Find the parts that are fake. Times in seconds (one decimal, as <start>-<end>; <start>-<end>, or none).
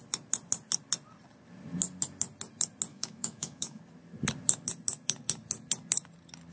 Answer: 2.9-3.8